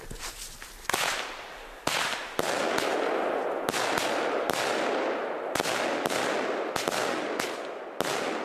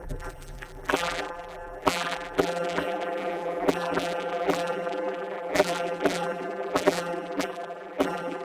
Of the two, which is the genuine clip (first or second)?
first